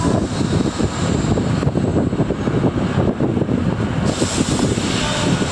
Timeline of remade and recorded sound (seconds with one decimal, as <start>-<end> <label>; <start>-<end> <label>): 0.0-1.9 remade; 1.9-3.1 recorded; 3.1-3.6 remade; 3.6-4.8 recorded; 4.8-5.5 remade